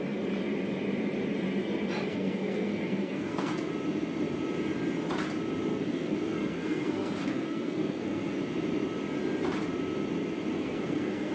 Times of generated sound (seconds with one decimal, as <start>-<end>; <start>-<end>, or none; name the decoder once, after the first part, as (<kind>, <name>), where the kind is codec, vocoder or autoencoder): 2.1-3.7 (codec, SNAC); 5.7-8.4; 10.5-11.3